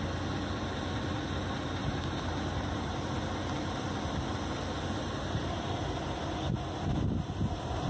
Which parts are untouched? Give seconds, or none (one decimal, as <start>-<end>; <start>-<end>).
0.0-1.8; 2.9-7.9

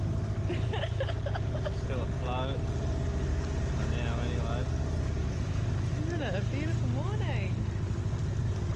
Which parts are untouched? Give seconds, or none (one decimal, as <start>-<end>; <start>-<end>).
0.0-8.8